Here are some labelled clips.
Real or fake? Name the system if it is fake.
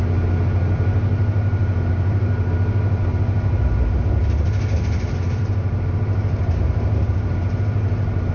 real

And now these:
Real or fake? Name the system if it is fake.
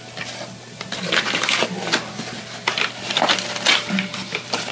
real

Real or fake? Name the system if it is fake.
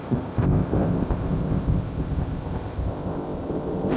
fake, codec, ZipCodec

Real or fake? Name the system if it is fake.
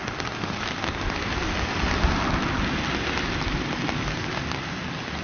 real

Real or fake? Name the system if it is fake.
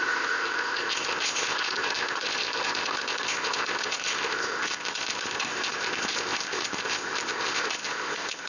fake, codec, ZipCodec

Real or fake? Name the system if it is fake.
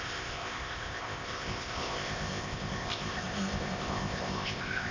fake, codec, ZipCodec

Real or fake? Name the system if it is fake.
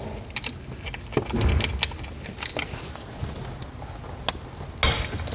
real